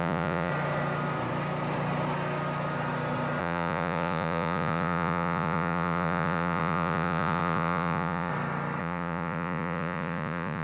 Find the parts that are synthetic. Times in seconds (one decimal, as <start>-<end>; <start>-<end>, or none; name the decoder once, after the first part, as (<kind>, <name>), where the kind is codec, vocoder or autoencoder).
0.0-0.5 (vocoder, Vocos); 3.4-8.3; 8.8-10.6